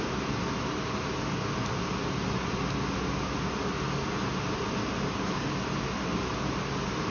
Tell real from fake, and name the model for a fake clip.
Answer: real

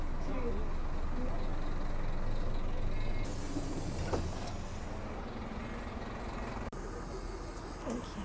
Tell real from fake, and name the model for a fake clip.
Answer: real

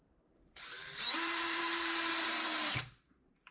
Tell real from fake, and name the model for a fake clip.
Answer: fake, vocoder, BigVGAN v2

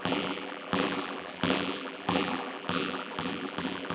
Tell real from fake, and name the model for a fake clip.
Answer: fake, vocoder, BigVGAN v2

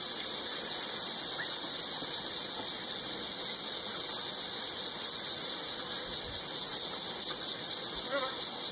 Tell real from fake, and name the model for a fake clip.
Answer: fake, vocoder, BigVGAN v2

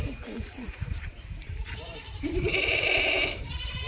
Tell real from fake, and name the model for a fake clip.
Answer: fake, vocoder, BigVGAN v2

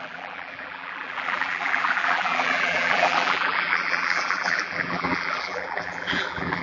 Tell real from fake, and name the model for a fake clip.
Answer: fake, vocoder, BigVGAN v2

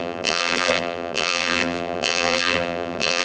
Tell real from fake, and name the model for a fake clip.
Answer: fake, vocoder, BigVGAN v2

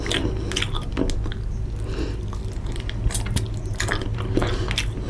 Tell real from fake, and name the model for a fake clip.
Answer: real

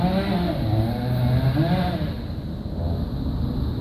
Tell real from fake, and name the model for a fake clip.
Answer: fake, vocoder, BigVGAN v2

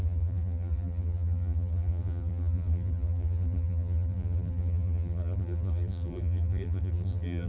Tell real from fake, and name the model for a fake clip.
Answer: fake, vocoder, BigVGAN v2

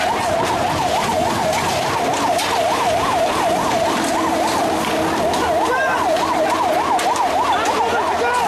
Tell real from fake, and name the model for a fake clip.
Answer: real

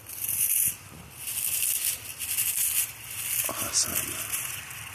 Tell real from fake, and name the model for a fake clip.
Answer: real